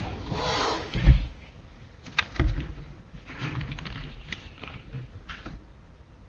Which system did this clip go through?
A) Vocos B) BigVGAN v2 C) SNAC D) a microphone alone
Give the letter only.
D